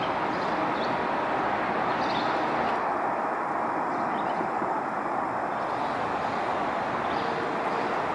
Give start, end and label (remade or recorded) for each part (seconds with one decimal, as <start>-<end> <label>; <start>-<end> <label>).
0.0-8.1 recorded